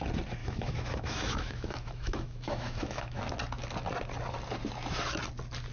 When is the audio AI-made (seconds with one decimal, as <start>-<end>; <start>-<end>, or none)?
0.4-3.2